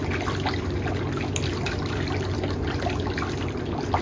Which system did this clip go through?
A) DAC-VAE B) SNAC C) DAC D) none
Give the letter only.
D